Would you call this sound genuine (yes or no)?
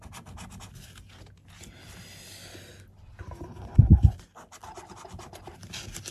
yes